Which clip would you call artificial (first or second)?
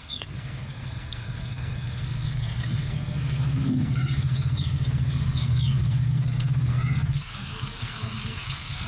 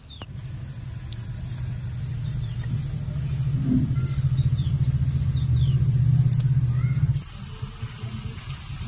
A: first